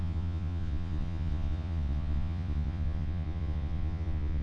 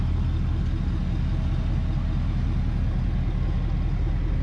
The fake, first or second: first